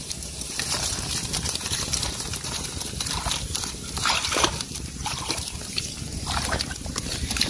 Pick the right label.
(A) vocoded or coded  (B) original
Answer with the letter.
A